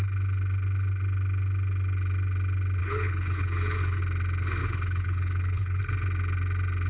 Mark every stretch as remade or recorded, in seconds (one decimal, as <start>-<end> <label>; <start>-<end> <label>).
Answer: 0.0-2.8 recorded; 2.8-4.0 remade; 4.0-4.6 recorded; 4.6-5.8 remade; 5.8-6.9 recorded